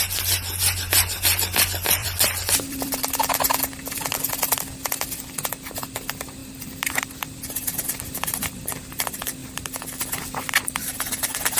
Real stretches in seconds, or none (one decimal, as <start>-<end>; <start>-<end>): 0.0-2.0; 4.9-6.4; 8.5-9.4; 10.5-11.6

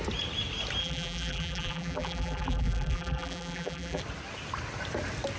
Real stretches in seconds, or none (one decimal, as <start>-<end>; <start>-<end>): 0.0-0.8; 4.0-5.4

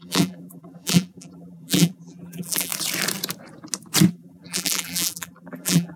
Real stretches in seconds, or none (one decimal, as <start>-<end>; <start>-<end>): 2.7-4.1

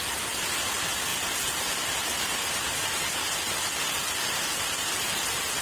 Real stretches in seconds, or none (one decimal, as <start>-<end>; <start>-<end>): 0.0-5.6

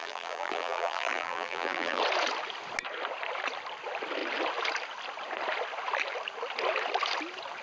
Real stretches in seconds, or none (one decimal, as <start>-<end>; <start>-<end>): 2.0-7.6